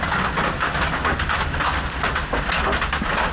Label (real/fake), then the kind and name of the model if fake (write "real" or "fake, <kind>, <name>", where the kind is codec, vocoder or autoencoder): real